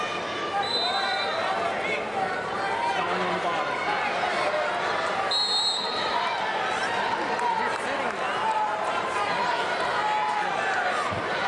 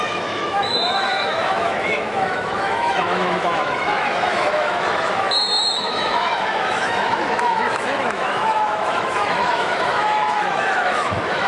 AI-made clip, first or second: second